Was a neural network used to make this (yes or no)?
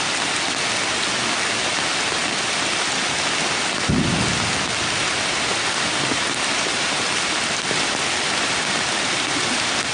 no